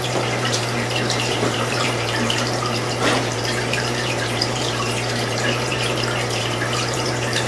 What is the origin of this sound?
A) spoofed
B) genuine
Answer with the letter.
A